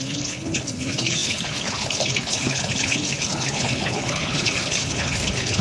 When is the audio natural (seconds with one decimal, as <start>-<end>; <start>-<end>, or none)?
none